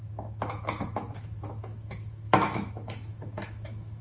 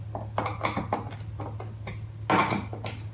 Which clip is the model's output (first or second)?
first